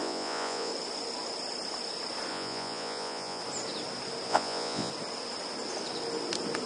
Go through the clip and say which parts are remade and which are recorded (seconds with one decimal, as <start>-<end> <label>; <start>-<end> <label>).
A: 0.0-0.7 remade; 0.7-2.3 recorded; 2.3-3.4 remade; 3.4-4.3 recorded; 4.3-4.9 remade; 4.9-6.7 recorded